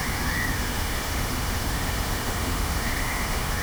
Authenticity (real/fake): fake